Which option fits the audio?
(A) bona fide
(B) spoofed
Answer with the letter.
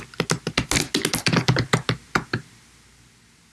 A